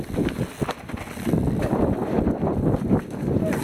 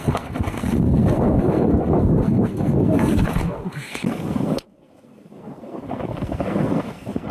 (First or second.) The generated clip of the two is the second